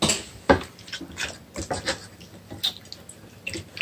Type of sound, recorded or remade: recorded